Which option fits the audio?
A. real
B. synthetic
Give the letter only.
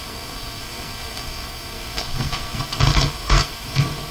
B